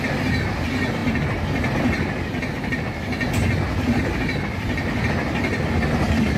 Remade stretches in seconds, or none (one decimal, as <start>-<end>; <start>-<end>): none